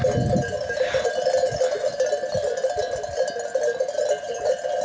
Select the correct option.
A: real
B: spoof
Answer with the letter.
A